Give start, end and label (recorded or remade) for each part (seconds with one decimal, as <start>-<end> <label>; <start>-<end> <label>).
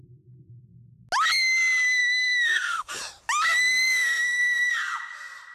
0.0-2.0 recorded; 2.0-2.9 remade; 2.9-3.6 recorded; 3.6-4.7 remade; 4.7-5.5 recorded